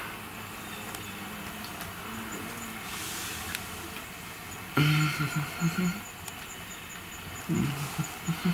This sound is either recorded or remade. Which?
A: recorded